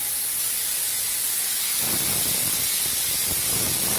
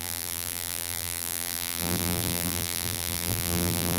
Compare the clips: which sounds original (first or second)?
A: first